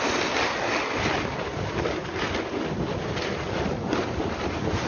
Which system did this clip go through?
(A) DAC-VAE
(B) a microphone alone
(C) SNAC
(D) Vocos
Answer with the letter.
B